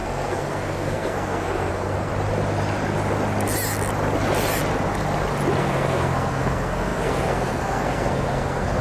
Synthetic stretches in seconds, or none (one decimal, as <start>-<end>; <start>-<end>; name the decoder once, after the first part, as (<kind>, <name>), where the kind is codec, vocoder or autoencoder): 0.0-2.1 (codec, SNAC); 5.6-8.8